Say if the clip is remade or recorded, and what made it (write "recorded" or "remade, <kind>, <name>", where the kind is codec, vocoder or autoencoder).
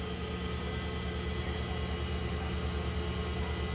recorded